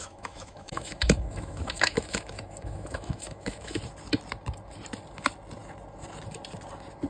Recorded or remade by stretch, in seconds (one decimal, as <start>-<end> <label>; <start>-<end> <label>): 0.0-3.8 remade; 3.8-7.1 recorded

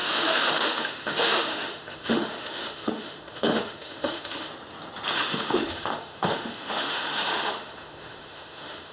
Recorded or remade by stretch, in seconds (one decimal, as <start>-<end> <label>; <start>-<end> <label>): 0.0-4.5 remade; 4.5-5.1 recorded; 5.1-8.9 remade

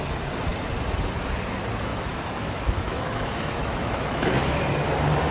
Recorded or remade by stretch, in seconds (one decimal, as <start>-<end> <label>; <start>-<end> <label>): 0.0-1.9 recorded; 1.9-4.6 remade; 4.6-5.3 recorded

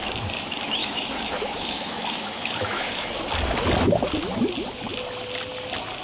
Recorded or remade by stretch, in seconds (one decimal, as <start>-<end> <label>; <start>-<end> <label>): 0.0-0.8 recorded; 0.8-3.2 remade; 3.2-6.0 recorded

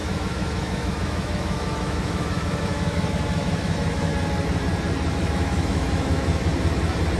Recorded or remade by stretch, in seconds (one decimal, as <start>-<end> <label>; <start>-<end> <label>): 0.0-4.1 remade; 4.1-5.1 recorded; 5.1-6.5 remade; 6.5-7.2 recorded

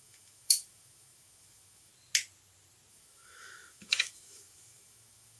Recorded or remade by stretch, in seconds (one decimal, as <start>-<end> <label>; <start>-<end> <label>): 0.0-1.9 remade; 1.9-2.9 recorded; 2.9-5.4 remade

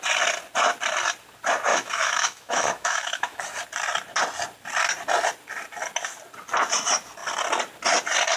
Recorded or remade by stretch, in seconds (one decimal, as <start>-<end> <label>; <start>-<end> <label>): 0.0-1.7 recorded; 1.7-3.4 remade; 3.4-8.4 recorded